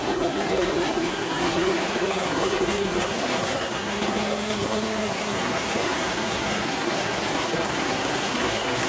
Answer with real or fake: fake